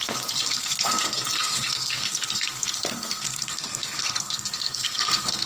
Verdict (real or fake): fake